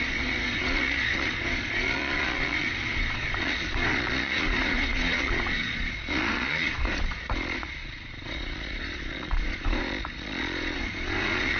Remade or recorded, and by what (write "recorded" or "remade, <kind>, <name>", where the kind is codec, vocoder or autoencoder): remade, vocoder, Vocos